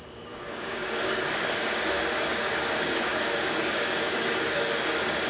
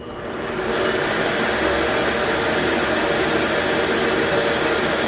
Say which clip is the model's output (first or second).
first